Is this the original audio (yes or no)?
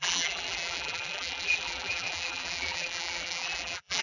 no